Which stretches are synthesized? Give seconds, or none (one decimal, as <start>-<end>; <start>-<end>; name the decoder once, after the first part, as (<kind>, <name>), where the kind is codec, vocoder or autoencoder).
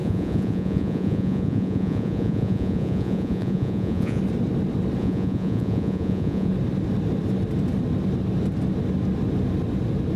0.0-4.2 (vocoder, Vocos); 5.0-6.5